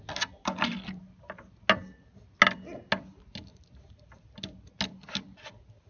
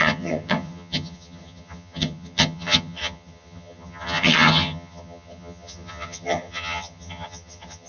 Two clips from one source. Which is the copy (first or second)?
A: second